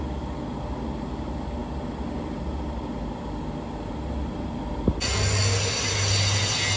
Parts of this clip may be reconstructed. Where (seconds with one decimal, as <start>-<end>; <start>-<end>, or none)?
none

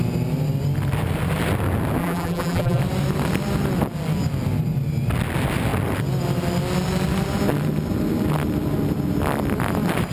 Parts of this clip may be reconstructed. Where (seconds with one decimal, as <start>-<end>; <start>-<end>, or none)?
2.0-2.8

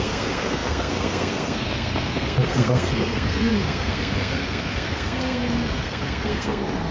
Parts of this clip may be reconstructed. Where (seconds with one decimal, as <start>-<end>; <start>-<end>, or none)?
0.0-6.9

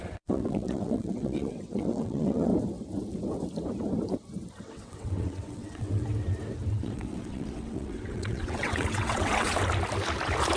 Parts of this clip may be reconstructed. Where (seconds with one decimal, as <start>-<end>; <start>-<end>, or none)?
0.0-2.5; 4.6-6.0; 6.7-9.6

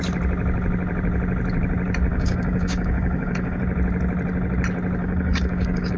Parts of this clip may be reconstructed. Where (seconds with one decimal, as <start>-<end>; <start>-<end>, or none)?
2.1-3.6; 5.0-6.0

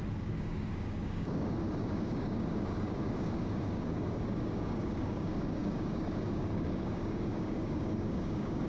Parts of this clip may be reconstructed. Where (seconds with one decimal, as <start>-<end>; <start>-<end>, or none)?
0.0-8.7

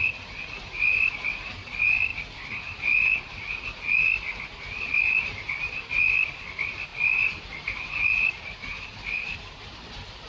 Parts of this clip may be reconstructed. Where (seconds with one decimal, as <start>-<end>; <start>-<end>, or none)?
0.0-10.3

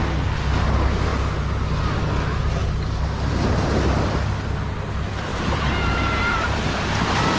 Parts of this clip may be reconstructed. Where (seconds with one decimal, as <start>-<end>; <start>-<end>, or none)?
5.3-6.6